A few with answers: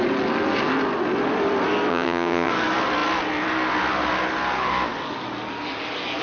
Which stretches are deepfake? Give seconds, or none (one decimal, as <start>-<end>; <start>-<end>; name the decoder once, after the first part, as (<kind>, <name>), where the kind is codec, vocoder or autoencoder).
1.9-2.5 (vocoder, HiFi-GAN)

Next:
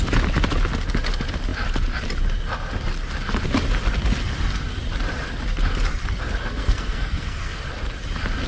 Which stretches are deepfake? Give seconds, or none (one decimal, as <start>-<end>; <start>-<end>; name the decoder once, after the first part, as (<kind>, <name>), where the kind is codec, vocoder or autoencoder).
6.4-7.6 (codec, SNAC)

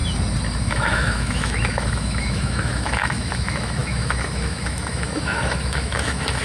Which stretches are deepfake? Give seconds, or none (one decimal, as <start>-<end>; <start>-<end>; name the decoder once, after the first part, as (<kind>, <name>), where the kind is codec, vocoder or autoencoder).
0.6-6.4 (autoencoder, DAC-VAE)